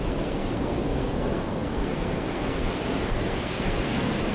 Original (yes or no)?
no